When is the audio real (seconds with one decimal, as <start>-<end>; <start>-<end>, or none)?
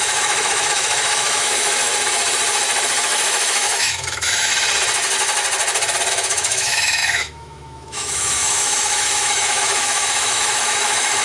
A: 1.9-3.0; 4.5-6.1